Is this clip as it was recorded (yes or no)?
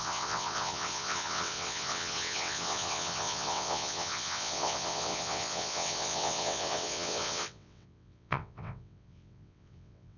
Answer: no